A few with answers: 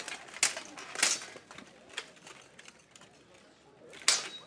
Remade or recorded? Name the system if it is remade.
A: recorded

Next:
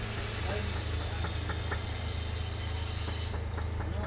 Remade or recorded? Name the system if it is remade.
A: recorded